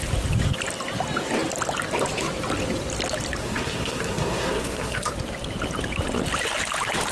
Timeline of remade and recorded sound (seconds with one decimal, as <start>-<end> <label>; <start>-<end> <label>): 0.0-3.4 recorded; 3.4-5.1 remade; 5.1-7.1 recorded